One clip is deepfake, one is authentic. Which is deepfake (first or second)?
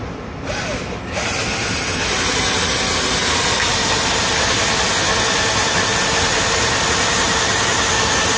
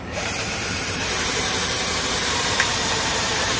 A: second